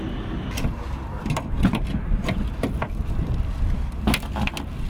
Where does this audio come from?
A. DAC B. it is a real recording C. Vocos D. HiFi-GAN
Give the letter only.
B